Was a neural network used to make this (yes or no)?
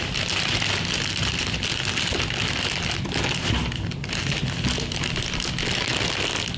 no